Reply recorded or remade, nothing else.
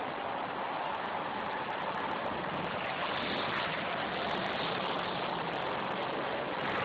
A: recorded